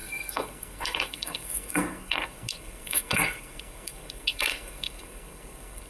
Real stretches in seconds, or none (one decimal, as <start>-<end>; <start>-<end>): none